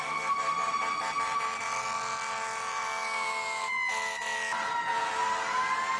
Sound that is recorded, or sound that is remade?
recorded